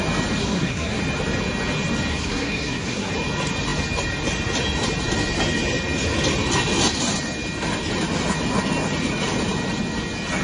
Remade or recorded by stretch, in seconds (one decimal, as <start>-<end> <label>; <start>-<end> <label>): 0.0-0.4 recorded; 0.4-1.0 remade; 1.0-2.1 recorded; 2.1-3.1 remade; 3.1-10.4 recorded